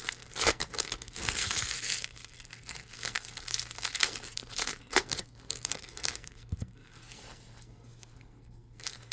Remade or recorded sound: remade